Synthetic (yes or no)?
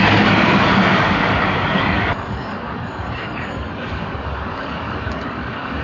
yes